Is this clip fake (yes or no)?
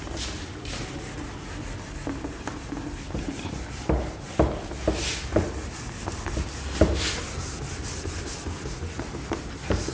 no